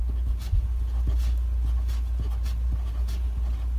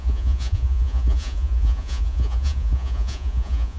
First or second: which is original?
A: first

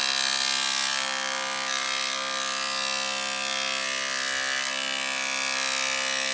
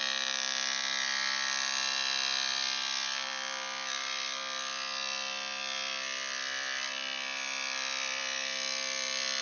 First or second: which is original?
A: first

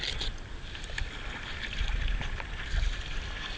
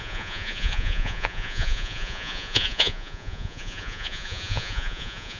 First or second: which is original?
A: first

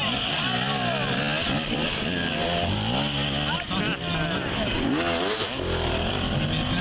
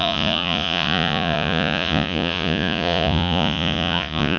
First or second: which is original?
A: first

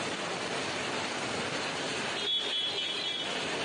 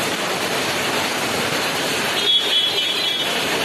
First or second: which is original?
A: first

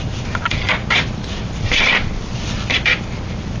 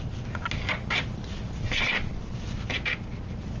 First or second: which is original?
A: second